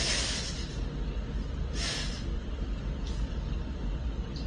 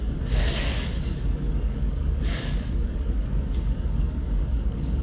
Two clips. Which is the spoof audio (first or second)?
second